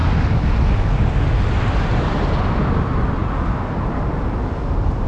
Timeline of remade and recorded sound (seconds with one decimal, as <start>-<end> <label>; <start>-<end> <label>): 0.0-5.1 recorded

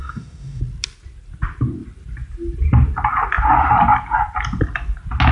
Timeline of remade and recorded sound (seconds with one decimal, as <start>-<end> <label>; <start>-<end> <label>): 0.0-0.6 remade; 0.6-5.3 recorded

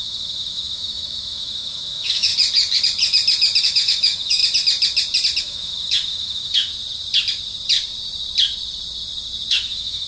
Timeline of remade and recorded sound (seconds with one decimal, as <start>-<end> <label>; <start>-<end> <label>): 0.0-2.3 remade; 2.3-3.6 recorded; 3.6-4.4 remade; 4.4-5.4 recorded; 5.4-6.7 remade; 6.7-9.5 recorded; 9.5-10.1 remade

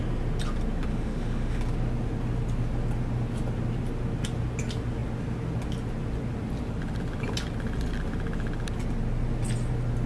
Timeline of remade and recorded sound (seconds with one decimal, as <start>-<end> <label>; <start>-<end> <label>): 0.0-0.9 recorded; 0.9-1.6 remade; 1.6-10.1 recorded

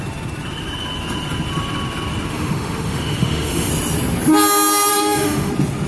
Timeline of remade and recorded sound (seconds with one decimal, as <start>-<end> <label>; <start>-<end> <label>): 0.0-2.3 recorded; 2.3-3.7 remade; 3.7-4.9 recorded; 4.9-5.5 remade; 5.5-5.9 recorded